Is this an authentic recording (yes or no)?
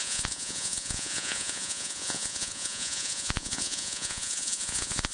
no